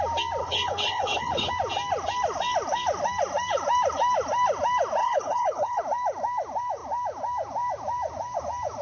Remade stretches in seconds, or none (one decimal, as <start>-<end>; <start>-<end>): 0.4-1.5; 5.0-5.8